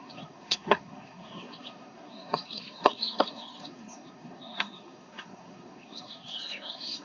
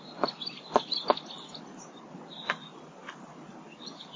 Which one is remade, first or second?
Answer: first